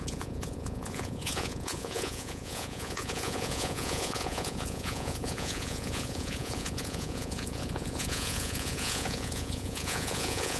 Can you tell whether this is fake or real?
fake